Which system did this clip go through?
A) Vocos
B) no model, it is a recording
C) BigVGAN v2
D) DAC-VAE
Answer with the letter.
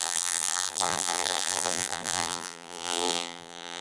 C